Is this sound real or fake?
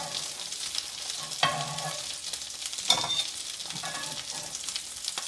real